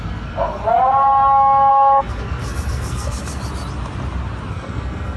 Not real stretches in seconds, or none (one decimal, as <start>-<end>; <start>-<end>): 0.0-0.6; 1.7-3.4; 4.5-5.2